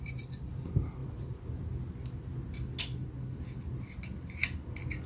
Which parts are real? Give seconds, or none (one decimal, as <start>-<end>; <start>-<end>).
0.0-5.1